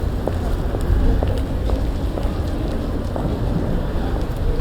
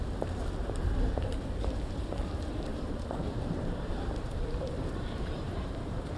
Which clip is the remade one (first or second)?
second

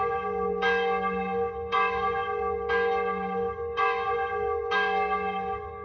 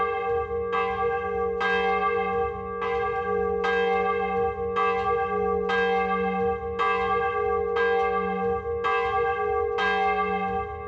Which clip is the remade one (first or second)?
first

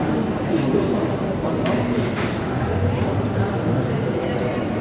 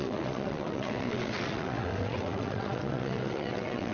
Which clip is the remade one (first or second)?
second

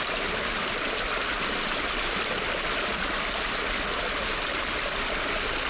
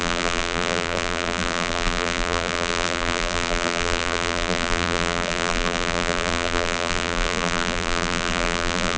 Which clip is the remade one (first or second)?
second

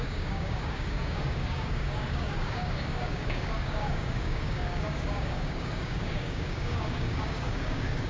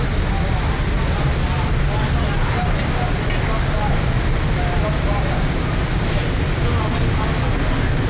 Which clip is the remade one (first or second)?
first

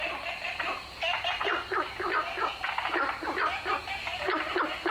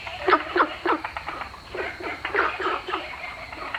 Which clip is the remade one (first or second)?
second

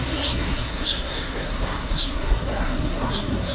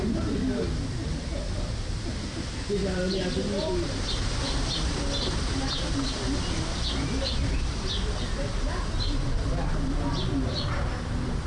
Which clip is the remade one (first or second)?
first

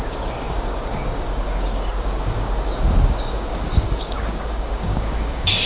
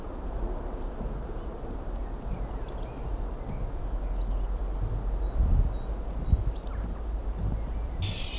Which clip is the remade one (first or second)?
first